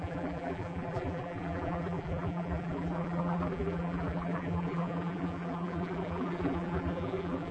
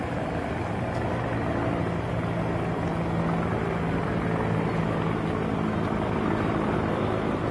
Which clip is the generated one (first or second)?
first